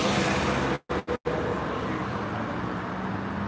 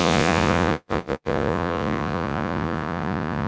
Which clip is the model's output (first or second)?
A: second